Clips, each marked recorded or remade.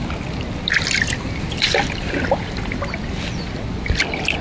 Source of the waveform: recorded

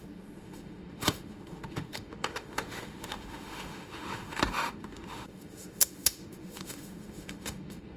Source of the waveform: remade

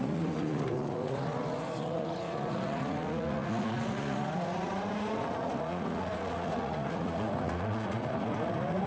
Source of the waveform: remade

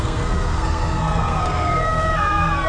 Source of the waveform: remade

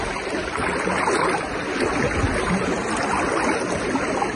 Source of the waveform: recorded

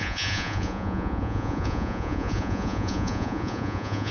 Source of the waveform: remade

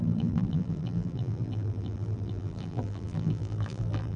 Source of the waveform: remade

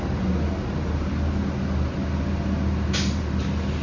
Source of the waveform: recorded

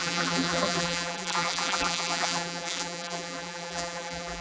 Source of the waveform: remade